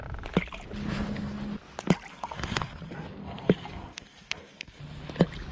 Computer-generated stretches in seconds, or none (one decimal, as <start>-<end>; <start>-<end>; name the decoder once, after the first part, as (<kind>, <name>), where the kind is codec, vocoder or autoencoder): 2.1-2.8 (codec, SNAC); 3.2-4.8